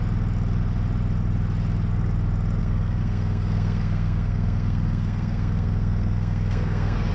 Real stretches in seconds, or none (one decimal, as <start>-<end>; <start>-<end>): 0.0-2.6